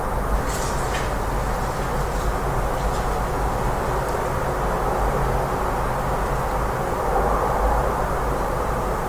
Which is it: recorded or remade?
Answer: recorded